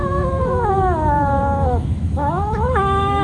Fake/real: fake